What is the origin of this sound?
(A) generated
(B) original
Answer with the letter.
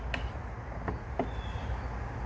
B